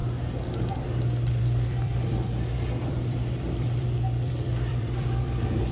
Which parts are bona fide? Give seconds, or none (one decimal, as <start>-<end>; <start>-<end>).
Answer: 0.0-1.4